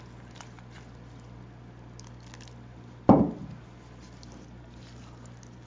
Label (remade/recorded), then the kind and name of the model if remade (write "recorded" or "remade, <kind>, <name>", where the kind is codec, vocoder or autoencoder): recorded